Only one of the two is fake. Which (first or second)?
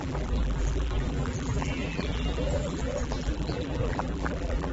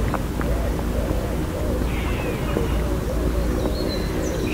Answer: first